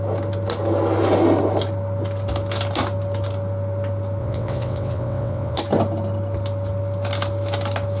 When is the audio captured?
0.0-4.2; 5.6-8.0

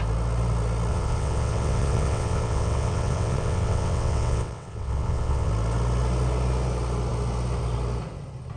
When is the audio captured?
0.0-0.9; 5.5-8.6

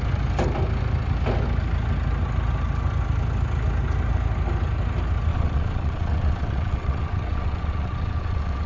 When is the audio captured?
0.0-5.3

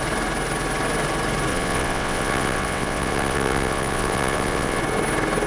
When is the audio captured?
0.0-1.5; 4.8-5.5

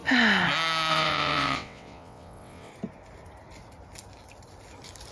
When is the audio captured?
0.0-0.9; 2.7-5.1

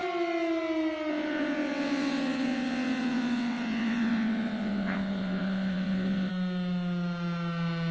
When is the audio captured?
0.0-1.1; 6.3-7.9